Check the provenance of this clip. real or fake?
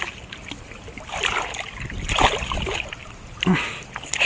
real